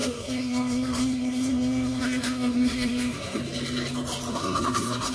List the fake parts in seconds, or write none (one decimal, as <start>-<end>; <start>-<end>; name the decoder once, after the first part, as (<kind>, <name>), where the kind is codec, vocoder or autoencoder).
0.0-3.4 (codec, SNAC); 4.3-5.1